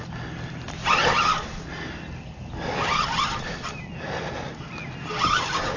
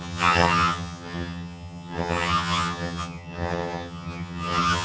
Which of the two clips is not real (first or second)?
second